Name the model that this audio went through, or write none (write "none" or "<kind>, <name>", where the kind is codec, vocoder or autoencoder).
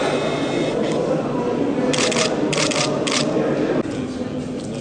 none